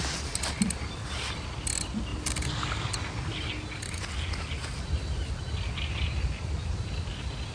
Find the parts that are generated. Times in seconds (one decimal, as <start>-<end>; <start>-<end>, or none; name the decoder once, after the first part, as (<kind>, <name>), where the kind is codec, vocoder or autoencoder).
none